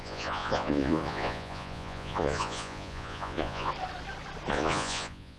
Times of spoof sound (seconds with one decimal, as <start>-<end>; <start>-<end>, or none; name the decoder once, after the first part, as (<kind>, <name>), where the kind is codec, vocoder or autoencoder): 0.0-3.7 (vocoder, Vocos); 4.5-5.4